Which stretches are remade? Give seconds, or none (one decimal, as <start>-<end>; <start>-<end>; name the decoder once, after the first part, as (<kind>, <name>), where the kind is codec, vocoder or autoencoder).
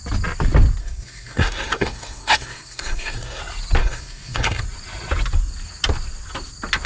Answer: 0.8-3.4 (codec, SNAC); 3.8-4.6